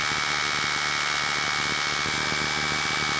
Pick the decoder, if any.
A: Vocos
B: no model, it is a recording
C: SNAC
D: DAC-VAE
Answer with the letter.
B